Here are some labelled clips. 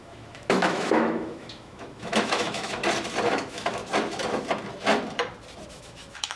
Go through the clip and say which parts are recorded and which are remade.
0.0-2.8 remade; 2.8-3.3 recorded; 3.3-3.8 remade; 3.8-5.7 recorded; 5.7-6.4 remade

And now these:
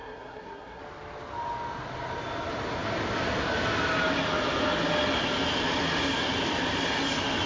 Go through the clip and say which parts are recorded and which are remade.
0.0-0.8 remade; 0.8-7.5 recorded

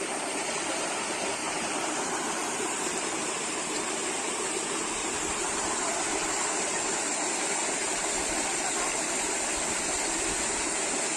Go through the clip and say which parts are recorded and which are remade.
0.0-1.4 recorded; 1.4-2.8 remade; 2.8-5.0 recorded; 5.0-9.6 remade; 9.6-11.2 recorded

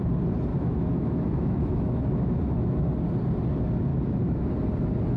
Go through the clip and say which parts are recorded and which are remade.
0.0-0.5 recorded; 0.5-2.9 remade; 2.9-3.9 recorded; 3.9-4.5 remade; 4.5-5.2 recorded

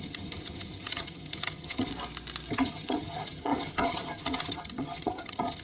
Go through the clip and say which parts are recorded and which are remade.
0.0-1.9 remade; 1.9-2.5 recorded; 2.5-5.6 remade

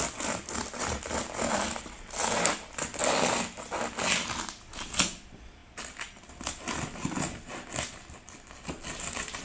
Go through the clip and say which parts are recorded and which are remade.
0.0-5.6 recorded; 5.6-6.3 remade; 6.3-9.4 recorded

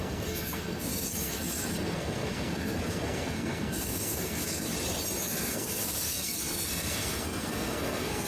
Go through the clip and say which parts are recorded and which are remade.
0.0-4.7 remade; 4.7-5.2 recorded; 5.2-8.3 remade